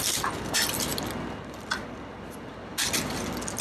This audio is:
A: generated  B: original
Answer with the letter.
B